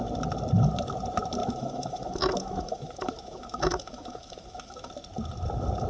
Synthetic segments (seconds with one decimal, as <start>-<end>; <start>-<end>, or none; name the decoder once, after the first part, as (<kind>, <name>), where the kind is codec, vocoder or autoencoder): 1.4-4.9 (autoencoder, DAC-VAE)